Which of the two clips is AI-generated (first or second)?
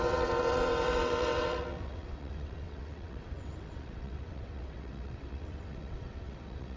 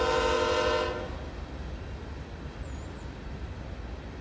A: first